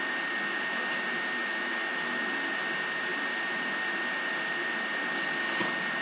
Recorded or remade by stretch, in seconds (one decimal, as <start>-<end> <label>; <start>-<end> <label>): 0.0-1.4 recorded; 1.4-2.2 remade; 2.2-6.0 recorded